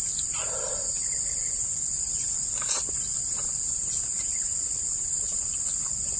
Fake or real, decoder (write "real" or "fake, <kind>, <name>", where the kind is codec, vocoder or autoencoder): fake, vocoder, BigVGAN v2